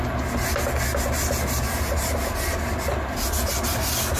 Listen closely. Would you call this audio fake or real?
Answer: real